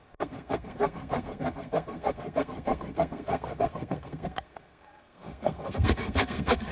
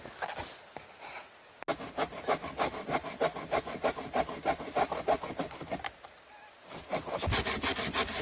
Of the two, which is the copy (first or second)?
first